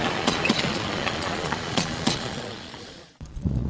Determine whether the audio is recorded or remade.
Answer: remade